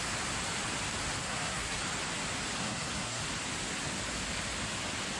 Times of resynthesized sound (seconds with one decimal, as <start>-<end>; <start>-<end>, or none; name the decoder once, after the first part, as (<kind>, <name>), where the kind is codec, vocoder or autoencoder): 1.2-1.8 (codec, SNAC); 2.6-3.2